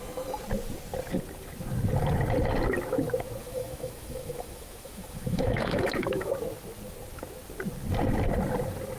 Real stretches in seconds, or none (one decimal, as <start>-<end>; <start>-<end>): 0.0-3.4; 6.3-9.0